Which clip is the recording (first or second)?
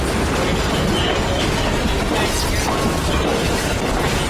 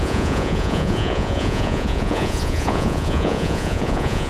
first